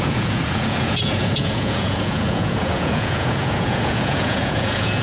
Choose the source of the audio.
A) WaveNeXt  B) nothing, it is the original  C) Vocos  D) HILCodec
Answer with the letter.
C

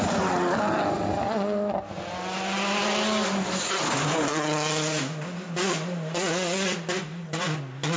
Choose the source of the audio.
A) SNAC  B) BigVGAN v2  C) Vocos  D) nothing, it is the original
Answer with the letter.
D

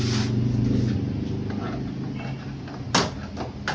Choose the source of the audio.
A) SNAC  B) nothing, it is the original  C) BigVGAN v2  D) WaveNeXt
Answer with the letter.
B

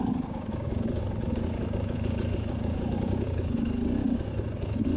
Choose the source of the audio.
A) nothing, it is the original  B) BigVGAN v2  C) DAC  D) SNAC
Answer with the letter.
C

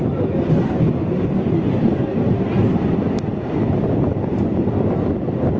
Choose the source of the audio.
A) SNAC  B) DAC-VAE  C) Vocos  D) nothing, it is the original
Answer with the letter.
D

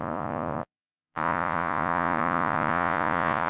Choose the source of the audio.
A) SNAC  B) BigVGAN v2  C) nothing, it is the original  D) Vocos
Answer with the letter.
D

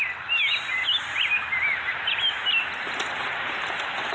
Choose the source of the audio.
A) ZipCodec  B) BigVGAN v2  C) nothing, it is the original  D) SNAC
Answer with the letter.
C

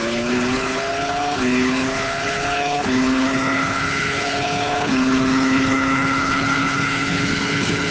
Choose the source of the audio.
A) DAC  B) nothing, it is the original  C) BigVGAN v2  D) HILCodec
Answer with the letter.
D